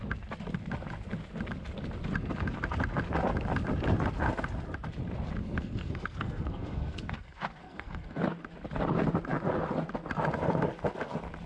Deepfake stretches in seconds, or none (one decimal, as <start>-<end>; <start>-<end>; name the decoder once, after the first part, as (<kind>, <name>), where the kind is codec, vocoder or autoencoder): 5.4-8.2 (codec, SNAC)